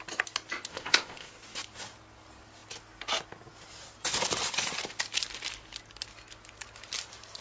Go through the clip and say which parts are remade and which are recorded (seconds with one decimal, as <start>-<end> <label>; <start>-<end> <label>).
0.0-0.7 recorded; 0.7-1.3 remade; 1.3-7.4 recorded